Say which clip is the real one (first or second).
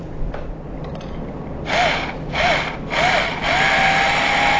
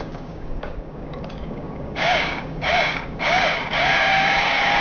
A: first